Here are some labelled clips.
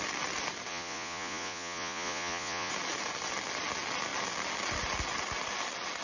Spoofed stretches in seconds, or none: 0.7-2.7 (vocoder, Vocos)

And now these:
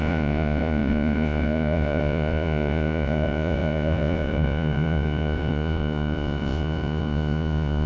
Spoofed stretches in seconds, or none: 0.0-7.9 (vocoder, Vocos)